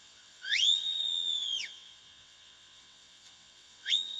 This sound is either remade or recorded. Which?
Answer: remade